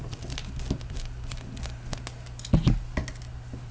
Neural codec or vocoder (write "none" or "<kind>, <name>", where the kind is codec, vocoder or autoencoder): none